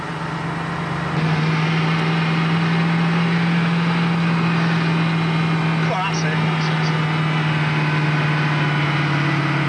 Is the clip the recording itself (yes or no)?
yes